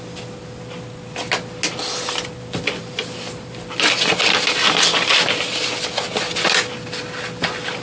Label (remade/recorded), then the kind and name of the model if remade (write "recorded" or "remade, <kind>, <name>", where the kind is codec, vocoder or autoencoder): recorded